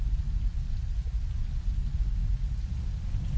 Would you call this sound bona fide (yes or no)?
yes